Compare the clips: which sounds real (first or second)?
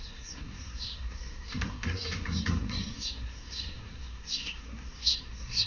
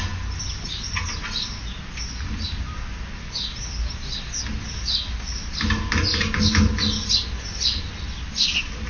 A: second